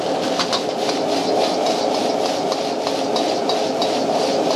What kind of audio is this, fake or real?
real